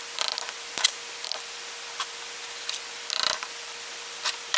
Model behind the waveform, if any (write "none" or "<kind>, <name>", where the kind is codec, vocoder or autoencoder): vocoder, BigVGAN v2